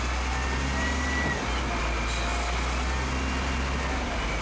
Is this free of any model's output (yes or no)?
yes